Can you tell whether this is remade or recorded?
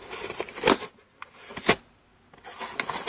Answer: recorded